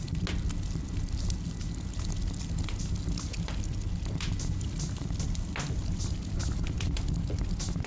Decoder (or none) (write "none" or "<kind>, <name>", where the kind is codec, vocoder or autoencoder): none